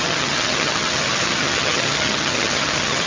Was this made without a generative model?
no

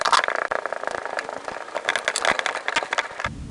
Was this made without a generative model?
yes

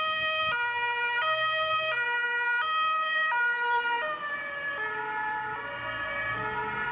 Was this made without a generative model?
yes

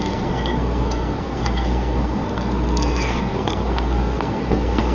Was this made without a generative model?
no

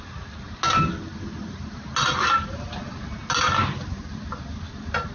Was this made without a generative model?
yes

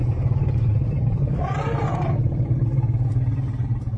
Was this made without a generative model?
no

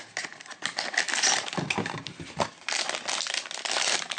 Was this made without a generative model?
yes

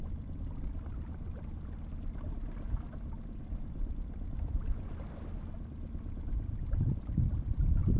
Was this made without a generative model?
yes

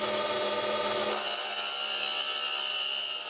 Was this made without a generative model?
yes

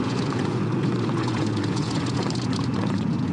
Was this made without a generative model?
no